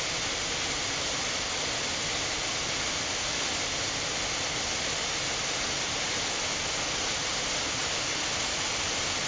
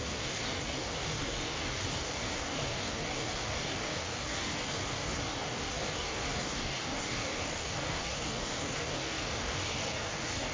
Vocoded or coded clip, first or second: second